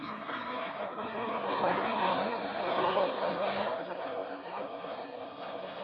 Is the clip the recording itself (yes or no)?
no